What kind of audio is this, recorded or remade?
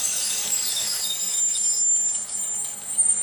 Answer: remade